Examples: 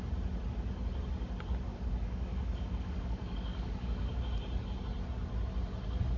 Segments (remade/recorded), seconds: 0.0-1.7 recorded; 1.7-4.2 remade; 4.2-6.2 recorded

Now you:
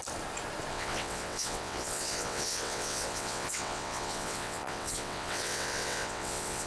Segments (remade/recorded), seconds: 0.0-0.7 recorded; 0.7-6.7 remade

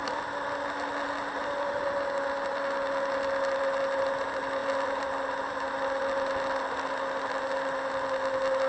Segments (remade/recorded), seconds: 0.0-8.7 recorded

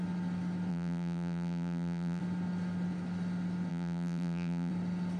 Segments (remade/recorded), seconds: 0.0-0.7 recorded; 0.7-2.2 remade; 2.2-3.7 recorded; 3.7-4.7 remade; 4.7-5.2 recorded

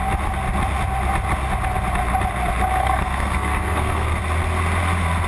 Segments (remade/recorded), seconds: 0.0-2.8 recorded; 2.8-4.2 remade; 4.2-5.3 recorded

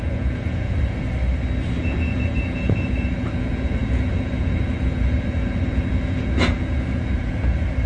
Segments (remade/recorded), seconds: 0.0-1.2 remade; 1.2-1.8 recorded; 1.8-7.9 remade

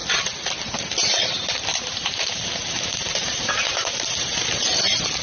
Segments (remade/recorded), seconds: 0.0-1.7 recorded; 1.7-4.8 remade; 4.8-5.2 recorded

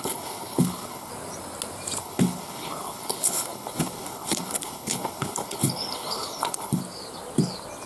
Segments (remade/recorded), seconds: 0.0-1.1 remade; 1.1-2.0 recorded; 2.0-6.8 remade; 6.8-7.9 recorded